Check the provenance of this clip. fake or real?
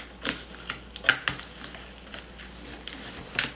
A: real